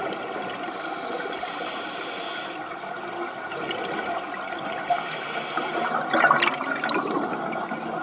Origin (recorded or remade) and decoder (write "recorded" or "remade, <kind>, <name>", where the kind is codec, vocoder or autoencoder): recorded